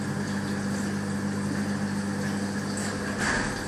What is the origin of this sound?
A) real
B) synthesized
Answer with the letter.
A